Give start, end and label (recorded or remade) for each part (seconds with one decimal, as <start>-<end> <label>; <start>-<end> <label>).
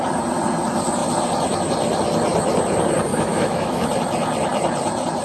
0.0-3.1 recorded; 3.1-3.9 remade; 3.9-5.2 recorded